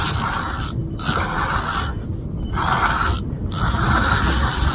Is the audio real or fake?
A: real